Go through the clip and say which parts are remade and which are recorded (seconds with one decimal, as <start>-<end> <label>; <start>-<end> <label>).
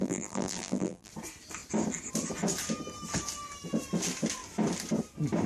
0.0-1.1 remade; 1.1-5.5 recorded